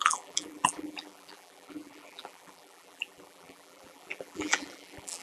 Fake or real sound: fake